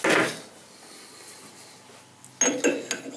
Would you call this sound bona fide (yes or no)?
yes